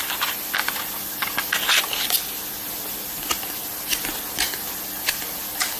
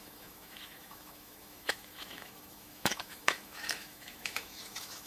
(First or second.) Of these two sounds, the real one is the first